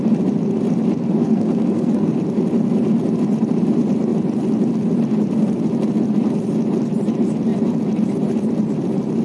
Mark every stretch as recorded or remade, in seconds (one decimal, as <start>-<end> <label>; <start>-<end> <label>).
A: 0.0-1.2 recorded; 1.2-2.1 remade; 2.1-9.2 recorded